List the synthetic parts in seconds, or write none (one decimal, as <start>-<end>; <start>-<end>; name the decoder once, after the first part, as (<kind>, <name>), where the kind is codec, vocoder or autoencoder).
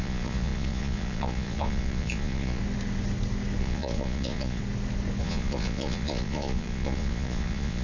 0.0-2.6 (vocoder, Vocos); 3.6-4.6; 5.2-7.8